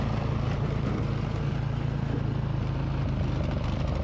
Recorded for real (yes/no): yes